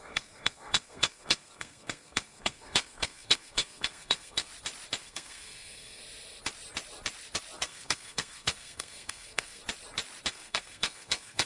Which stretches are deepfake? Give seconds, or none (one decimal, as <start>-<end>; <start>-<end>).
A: 0.0-4.5; 5.0-6.0; 7.6-9.6; 10.3-11.4